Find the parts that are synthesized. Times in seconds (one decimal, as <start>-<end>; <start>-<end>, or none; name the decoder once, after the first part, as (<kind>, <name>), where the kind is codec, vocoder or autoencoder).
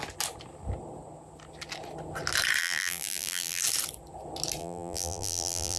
2.6-3.6 (vocoder, BigVGAN v2); 4.6-5.8